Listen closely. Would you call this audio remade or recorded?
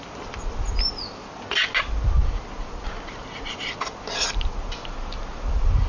recorded